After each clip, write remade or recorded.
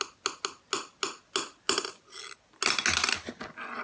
recorded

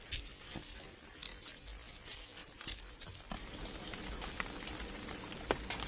recorded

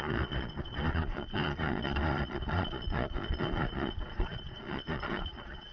remade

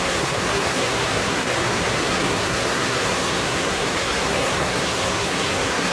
remade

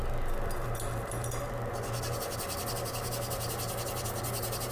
recorded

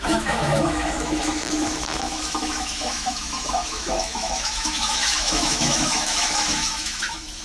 remade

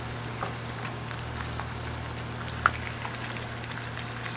recorded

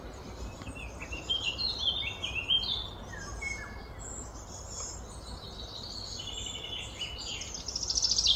recorded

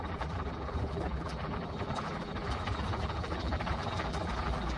remade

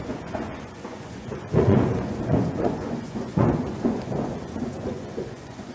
remade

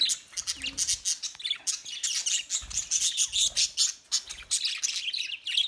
recorded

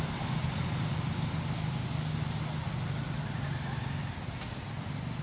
recorded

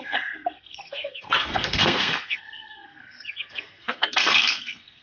remade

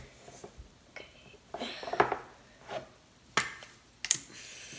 recorded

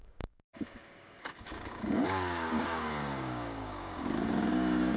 remade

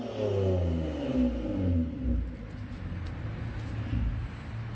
recorded